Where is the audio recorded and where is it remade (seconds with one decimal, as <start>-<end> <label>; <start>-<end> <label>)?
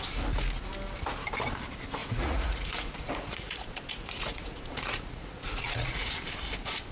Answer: 0.0-2.0 recorded; 2.0-6.1 remade; 6.1-6.9 recorded